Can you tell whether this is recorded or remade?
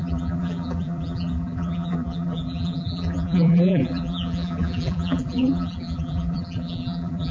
remade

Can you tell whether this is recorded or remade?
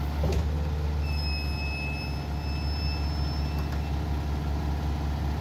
recorded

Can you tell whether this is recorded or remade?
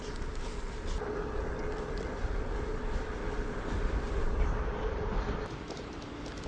recorded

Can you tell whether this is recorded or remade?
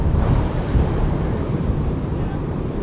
remade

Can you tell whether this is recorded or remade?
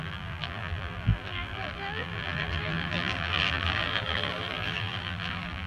remade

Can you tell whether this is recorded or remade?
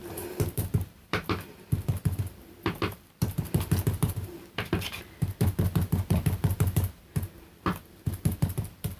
remade